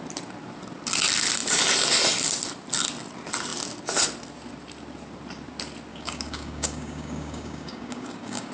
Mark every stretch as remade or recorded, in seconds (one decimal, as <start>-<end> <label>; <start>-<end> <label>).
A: 0.0-5.9 recorded; 5.9-8.5 remade